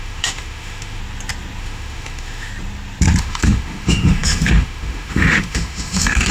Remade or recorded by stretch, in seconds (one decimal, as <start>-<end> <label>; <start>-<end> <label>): 0.0-1.0 remade; 1.0-1.6 recorded; 1.6-2.5 remade; 2.5-3.2 recorded; 3.2-6.3 remade